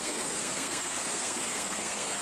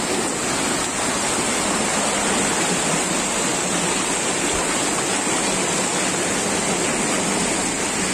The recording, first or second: second